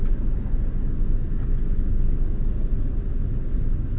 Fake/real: real